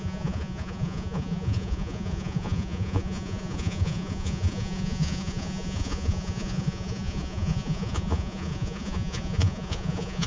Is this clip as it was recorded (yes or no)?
no